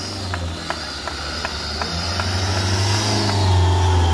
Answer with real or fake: real